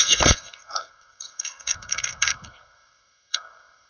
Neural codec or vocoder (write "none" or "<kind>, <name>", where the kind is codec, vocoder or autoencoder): codec, SNAC